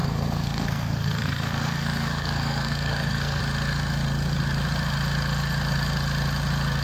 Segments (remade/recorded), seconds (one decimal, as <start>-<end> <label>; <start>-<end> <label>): 0.0-3.4 remade; 3.4-6.8 recorded